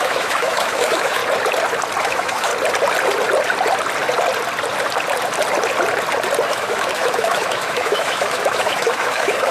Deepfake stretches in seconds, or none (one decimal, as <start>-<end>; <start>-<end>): 0.0-1.2; 2.0-2.5; 6.5-9.5